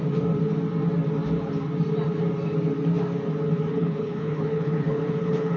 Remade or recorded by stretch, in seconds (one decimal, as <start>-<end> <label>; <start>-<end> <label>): 0.0-3.7 recorded; 3.7-5.6 remade